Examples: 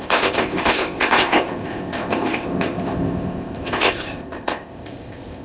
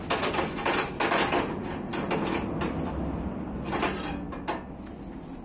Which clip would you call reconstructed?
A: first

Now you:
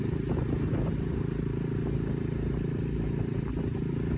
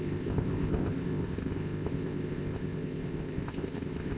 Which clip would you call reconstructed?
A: second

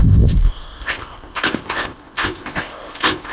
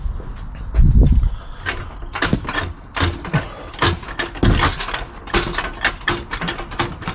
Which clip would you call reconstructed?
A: first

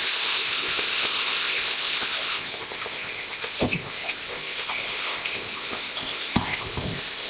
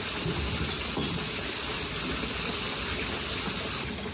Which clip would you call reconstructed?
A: first